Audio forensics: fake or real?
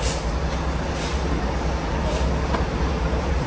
real